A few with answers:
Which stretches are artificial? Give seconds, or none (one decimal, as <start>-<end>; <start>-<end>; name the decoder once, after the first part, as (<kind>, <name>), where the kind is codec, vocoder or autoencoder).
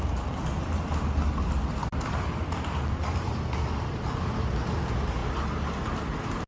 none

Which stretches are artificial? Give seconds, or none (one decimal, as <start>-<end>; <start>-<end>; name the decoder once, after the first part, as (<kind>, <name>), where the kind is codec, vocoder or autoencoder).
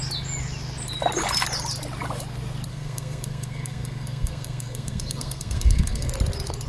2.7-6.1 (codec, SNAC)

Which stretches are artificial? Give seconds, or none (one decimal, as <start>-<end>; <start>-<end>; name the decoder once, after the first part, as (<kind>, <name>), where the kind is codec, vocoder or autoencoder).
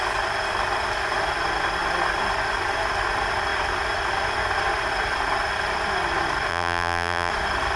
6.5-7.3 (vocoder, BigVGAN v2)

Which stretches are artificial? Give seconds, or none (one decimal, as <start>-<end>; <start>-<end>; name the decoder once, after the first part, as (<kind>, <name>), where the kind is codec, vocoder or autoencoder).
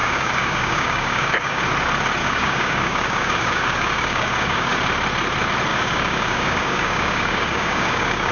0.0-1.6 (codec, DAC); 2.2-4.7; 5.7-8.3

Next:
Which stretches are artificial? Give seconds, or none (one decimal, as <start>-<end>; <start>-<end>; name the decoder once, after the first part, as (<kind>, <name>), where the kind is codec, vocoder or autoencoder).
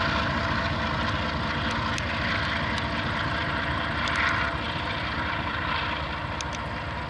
3.4-5.8 (vocoder, BigVGAN v2)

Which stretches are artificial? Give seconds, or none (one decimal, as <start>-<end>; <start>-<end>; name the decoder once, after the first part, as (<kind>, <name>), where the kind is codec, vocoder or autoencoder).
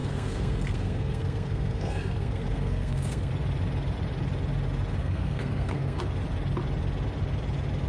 0.0-3.3 (codec, SNAC); 5.0-6.0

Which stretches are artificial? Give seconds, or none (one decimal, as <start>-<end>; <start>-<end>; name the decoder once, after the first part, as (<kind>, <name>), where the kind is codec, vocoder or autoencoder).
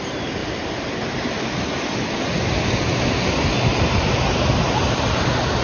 none